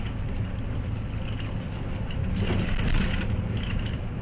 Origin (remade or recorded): recorded